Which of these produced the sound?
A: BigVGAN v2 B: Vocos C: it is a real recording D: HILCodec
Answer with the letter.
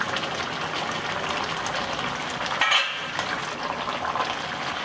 C